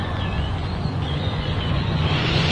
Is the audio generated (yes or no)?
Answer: yes